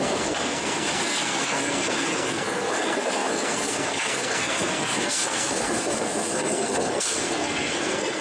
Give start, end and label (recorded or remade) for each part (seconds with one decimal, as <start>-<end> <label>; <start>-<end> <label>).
0.0-8.2 remade